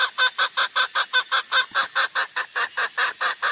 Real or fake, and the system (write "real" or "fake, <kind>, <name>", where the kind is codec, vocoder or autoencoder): real